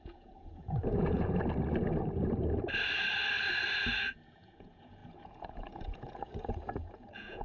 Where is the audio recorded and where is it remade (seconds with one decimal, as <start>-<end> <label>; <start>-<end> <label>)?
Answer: 0.0-1.4 remade; 1.4-4.1 recorded; 4.1-7.4 remade